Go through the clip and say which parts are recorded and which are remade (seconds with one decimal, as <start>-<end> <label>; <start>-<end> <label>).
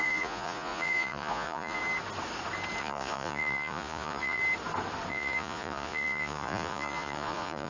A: 0.0-1.8 remade; 1.8-2.8 recorded; 2.8-4.4 remade; 4.4-5.1 recorded; 5.1-7.7 remade